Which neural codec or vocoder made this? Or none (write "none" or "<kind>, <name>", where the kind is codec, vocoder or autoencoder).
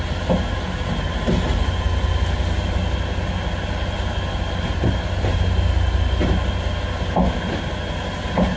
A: none